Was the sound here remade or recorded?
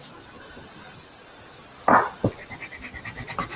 recorded